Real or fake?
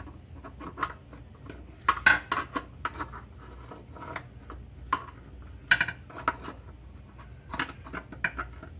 real